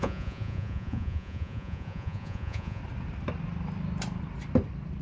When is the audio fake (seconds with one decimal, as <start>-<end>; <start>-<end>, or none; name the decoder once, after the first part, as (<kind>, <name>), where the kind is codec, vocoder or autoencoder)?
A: 0.0-2.8 (vocoder, Vocos)